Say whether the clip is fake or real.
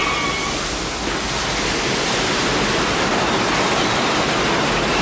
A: real